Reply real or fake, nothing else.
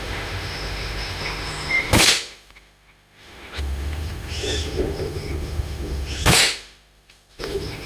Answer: fake